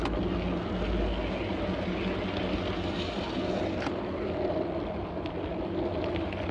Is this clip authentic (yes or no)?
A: yes